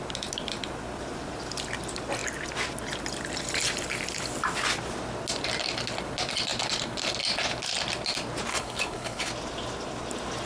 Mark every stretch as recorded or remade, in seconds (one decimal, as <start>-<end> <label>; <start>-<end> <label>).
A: 0.0-8.5 recorded; 8.5-9.3 remade; 9.3-10.5 recorded